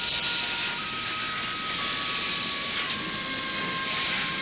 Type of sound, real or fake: real